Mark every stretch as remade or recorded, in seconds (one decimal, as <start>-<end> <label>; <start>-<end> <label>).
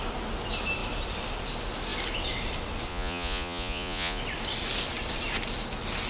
0.0-2.9 recorded; 2.9-4.2 remade; 4.2-6.1 recorded